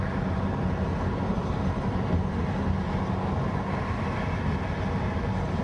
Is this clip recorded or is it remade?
recorded